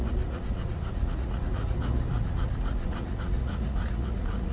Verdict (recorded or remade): remade